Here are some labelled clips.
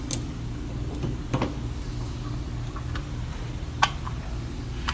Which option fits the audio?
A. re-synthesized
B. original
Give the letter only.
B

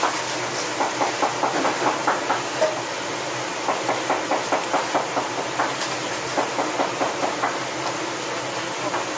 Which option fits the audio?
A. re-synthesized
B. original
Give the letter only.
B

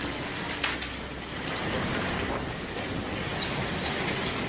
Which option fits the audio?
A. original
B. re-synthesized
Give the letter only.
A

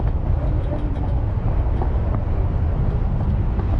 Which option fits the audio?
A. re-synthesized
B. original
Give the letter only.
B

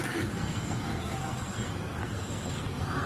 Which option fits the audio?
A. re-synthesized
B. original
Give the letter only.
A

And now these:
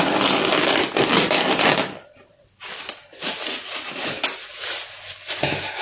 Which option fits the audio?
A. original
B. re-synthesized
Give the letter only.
A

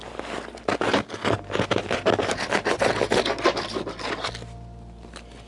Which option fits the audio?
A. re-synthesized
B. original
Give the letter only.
B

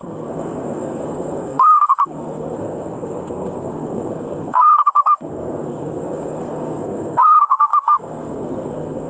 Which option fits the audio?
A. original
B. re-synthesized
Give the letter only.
B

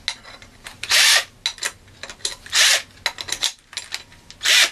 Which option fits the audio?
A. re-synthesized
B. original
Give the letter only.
B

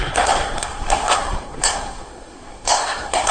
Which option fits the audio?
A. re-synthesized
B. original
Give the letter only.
A